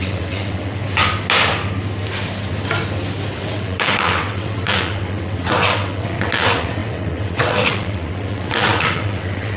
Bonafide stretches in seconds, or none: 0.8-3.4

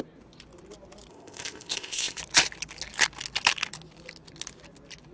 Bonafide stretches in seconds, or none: 0.0-1.1; 2.2-5.1

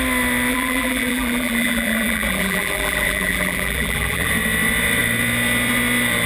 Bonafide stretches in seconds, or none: 0.0-0.5; 4.3-6.3